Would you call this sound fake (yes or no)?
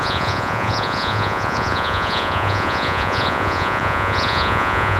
yes